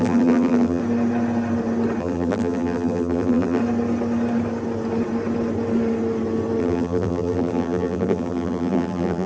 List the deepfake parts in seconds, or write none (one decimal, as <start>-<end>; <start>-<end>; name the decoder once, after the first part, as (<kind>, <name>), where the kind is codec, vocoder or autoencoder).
0.0-0.8 (vocoder, BigVGAN v2); 2.0-3.6; 6.6-9.3